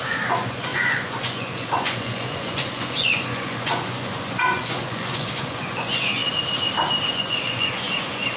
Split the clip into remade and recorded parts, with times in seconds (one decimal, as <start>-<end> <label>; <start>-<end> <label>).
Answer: 0.0-6.2 remade; 6.2-7.1 recorded; 7.1-8.4 remade